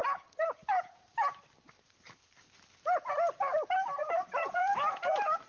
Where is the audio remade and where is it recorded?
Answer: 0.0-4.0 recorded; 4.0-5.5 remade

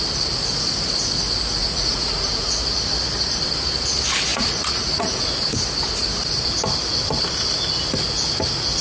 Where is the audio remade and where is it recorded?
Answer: 0.0-1.6 recorded; 1.6-2.6 remade; 2.6-4.3 recorded; 4.3-5.3 remade; 5.3-8.8 recorded